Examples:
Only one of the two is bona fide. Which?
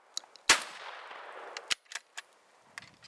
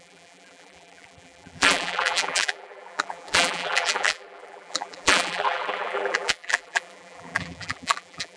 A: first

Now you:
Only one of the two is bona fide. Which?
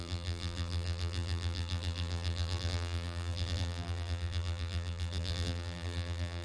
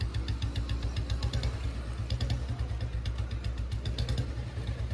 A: second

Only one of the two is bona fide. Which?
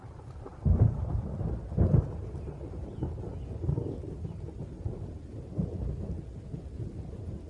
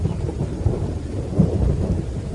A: first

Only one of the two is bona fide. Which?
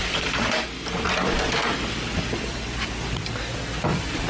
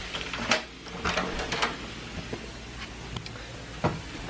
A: second